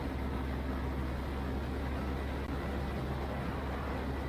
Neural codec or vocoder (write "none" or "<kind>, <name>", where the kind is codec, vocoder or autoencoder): none